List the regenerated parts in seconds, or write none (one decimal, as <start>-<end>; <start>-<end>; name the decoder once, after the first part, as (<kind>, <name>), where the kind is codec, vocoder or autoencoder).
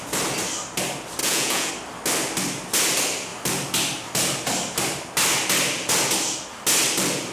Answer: 1.2-1.7 (vocoder, Vocos)